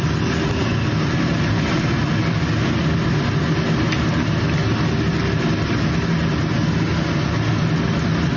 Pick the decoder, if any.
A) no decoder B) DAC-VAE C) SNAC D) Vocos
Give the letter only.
A